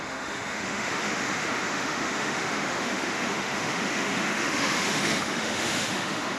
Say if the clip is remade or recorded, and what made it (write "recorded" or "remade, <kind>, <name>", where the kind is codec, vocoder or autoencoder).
remade, autoencoder, DAC-VAE